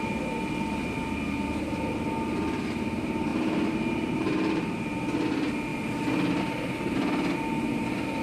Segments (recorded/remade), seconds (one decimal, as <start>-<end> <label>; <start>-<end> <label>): 0.0-3.3 recorded; 3.3-4.7 remade; 4.7-8.2 recorded